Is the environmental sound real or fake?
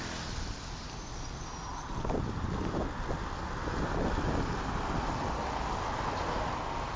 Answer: real